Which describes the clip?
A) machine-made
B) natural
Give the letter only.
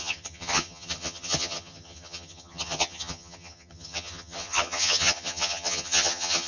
A